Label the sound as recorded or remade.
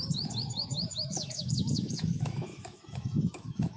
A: remade